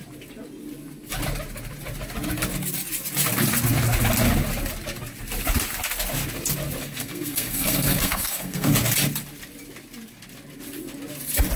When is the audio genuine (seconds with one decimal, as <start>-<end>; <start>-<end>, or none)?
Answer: 0.0-6.8; 8.7-11.6